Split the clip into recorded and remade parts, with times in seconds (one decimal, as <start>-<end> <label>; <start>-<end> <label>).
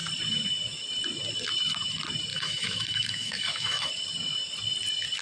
0.0-2.3 recorded; 2.3-3.9 remade; 3.9-5.2 recorded